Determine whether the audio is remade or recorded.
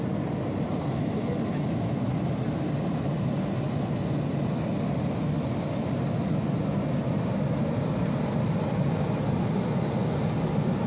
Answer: recorded